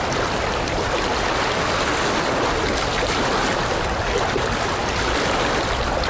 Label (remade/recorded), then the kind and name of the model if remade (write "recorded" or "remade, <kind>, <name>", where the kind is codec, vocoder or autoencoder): recorded